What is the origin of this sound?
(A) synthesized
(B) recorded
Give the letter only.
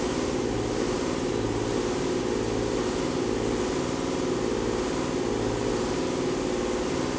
B